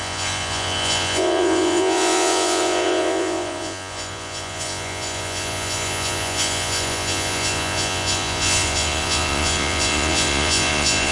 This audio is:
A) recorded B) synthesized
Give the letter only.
B